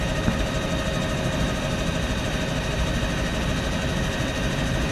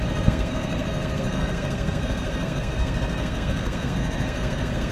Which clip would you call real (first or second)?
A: first